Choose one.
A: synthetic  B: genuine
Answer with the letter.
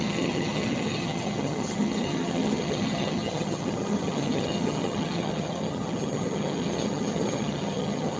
A